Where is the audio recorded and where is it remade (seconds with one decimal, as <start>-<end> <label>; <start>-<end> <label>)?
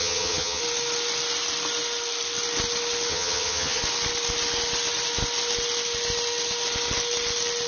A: 0.0-0.6 remade; 0.6-3.1 recorded; 3.1-3.8 remade; 3.8-7.7 recorded